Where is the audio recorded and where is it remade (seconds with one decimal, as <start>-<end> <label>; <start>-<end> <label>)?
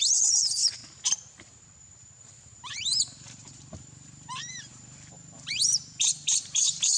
0.0-0.8 remade; 0.8-1.8 recorded; 1.8-7.0 remade